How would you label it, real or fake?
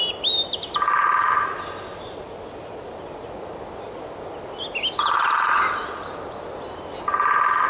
real